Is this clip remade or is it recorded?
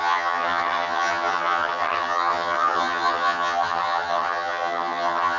remade